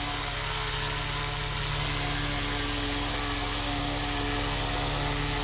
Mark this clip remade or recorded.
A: recorded